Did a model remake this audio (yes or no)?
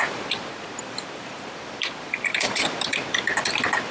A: yes